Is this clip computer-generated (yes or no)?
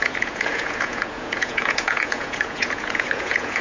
yes